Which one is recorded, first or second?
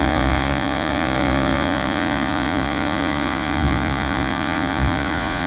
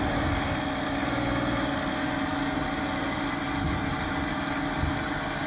second